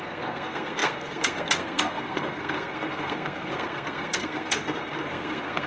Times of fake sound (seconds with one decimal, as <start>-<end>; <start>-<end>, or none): 0.0-5.7